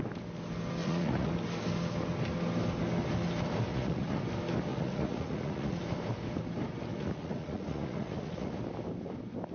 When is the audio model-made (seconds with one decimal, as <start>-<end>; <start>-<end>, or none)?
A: 0.8-1.3; 3.7-4.2; 4.7-5.8; 6.9-8.5